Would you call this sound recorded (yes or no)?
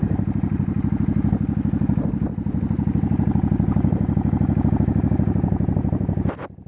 yes